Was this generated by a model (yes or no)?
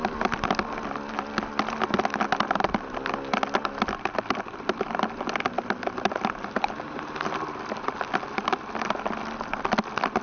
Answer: no